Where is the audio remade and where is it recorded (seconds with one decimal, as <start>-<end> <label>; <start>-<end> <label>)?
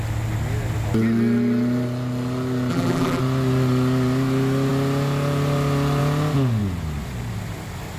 0.0-2.7 recorded; 2.7-3.2 remade; 3.2-8.0 recorded